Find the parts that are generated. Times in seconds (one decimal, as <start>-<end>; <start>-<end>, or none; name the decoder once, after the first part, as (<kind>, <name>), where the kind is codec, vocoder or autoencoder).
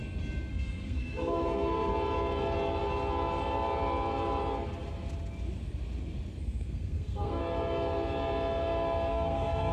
0.5-1.9 (codec, SNAC); 6.4-7.4; 9.1-9.7